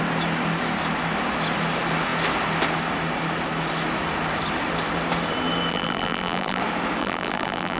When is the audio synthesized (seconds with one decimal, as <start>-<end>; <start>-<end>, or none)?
5.7-6.6; 7.0-7.8